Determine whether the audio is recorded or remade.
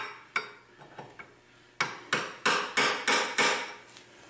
recorded